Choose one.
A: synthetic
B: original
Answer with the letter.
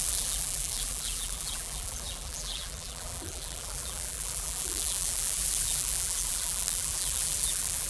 A